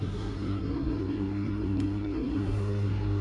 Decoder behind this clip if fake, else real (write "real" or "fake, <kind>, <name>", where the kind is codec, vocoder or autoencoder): fake, codec, SNAC